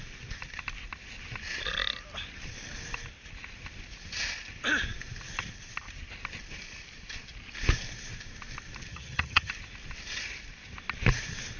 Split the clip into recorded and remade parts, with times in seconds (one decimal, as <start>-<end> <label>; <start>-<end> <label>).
0.0-8.9 recorded; 8.9-9.5 remade; 9.5-11.6 recorded